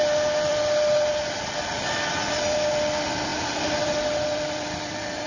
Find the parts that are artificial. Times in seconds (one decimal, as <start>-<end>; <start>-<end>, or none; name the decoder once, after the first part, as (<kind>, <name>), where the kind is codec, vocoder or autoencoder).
none